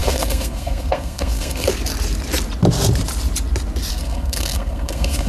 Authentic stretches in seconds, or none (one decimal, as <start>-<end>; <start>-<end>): 1.7-3.9